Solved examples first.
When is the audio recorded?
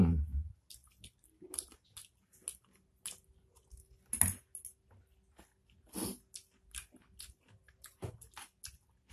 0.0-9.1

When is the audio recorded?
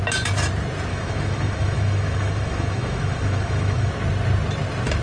0.0-0.9; 3.9-5.0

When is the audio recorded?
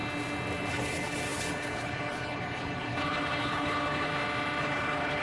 0.0-0.7; 4.1-4.6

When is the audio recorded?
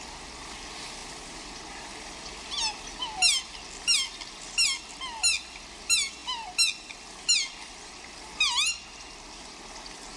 0.0-10.2